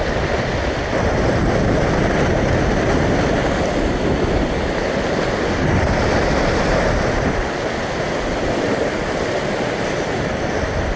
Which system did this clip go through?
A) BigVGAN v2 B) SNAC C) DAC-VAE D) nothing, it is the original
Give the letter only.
D